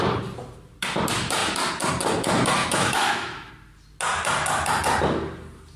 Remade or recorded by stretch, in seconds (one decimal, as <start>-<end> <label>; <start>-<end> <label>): 0.0-2.6 recorded; 2.6-3.5 remade; 3.5-5.8 recorded